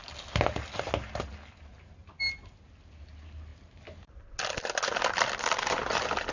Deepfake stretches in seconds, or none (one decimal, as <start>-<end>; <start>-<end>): none